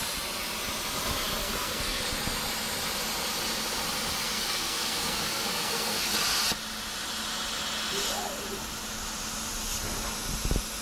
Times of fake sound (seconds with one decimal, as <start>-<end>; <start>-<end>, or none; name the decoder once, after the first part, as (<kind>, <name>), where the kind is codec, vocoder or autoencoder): 1.4-2.0 (codec, SNAC); 4.2-6.0